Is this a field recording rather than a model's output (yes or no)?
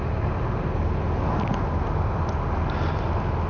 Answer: yes